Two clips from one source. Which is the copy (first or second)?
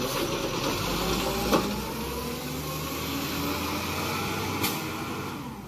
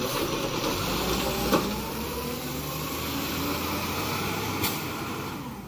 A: second